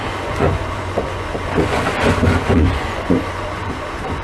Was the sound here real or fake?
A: fake